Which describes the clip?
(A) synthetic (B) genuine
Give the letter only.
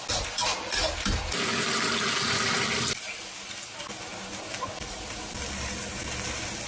B